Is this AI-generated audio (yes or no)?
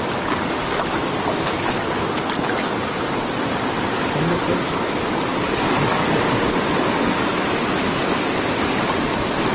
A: no